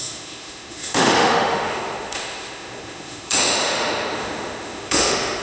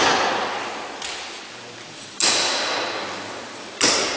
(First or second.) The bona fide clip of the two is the second